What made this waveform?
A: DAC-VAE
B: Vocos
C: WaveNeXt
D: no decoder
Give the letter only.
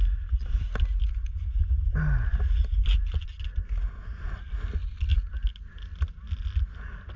D